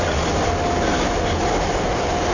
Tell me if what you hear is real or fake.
real